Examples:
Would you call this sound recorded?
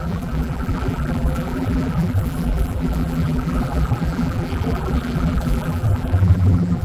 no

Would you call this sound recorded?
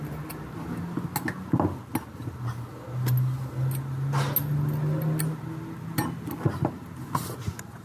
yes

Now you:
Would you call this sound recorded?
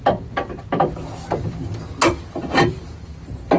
yes